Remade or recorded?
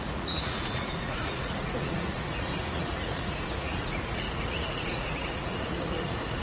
remade